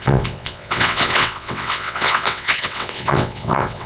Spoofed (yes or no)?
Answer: yes